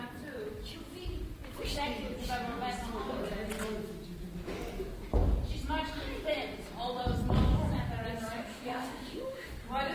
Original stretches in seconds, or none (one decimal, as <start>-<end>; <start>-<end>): 0.0-8.4; 9.5-9.9